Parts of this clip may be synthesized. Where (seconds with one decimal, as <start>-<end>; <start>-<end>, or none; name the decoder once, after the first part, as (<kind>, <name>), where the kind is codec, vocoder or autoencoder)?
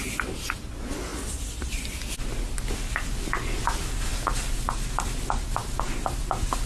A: none